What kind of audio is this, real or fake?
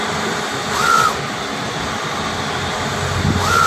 real